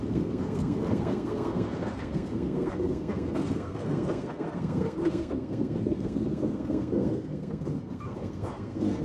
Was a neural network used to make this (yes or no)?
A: yes